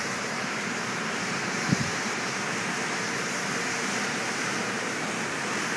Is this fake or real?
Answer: fake